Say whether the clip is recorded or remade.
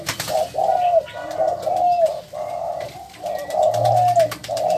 recorded